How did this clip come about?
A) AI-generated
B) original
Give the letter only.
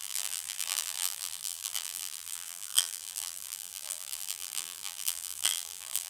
A